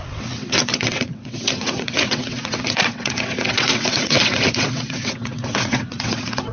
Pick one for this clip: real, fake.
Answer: fake